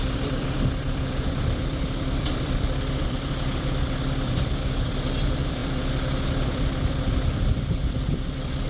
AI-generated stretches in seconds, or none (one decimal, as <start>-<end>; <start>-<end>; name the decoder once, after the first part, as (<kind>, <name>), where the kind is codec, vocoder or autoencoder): 0.0-8.7 (vocoder, BigVGAN v2)